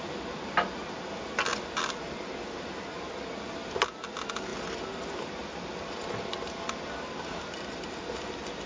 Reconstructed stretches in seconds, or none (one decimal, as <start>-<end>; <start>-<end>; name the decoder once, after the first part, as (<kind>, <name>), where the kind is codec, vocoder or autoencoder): none